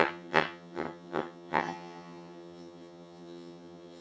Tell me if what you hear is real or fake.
fake